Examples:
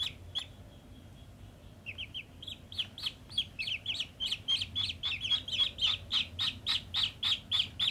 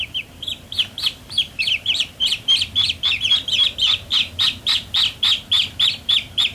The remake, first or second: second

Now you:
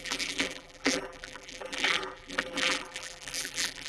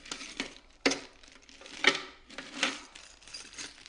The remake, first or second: first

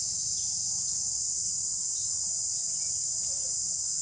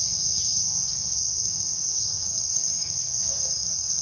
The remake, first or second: second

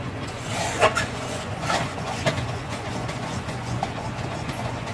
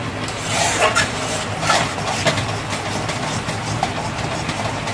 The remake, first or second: first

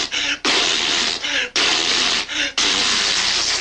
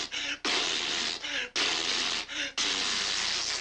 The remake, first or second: first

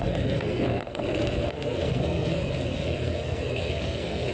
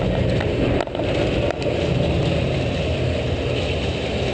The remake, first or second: first